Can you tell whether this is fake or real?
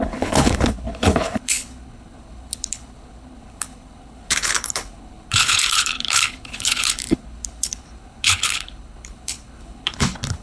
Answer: fake